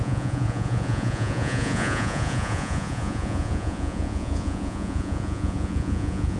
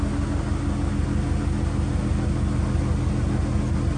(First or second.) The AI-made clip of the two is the first